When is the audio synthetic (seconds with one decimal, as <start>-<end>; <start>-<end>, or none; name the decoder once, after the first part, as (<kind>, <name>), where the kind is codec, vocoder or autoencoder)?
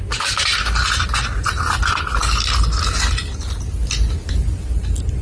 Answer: none